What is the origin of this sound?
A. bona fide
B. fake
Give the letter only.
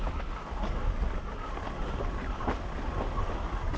A